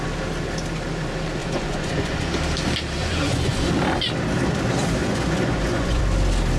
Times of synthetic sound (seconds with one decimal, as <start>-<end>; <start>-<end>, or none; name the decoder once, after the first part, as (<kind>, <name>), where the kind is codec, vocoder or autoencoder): 1.4-2.3 (vocoder, Vocos); 3.0-3.7; 5.0-6.0